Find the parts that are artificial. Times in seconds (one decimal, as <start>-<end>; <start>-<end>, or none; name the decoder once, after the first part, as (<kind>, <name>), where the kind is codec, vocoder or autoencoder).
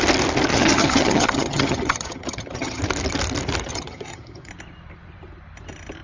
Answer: 0.5-2.8 (vocoder, HiFi-GAN); 3.7-4.5